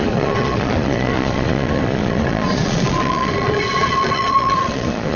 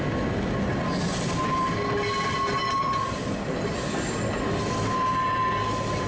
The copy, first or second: first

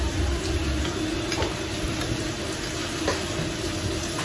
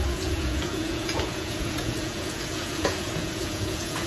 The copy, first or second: second